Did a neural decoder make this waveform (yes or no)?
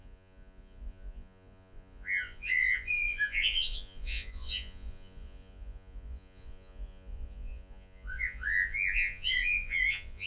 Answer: yes